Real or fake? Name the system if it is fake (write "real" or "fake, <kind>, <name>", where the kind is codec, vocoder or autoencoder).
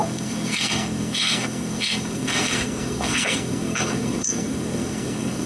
fake, codec, SNAC